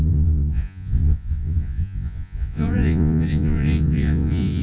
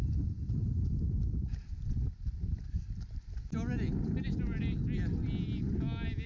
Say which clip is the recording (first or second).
second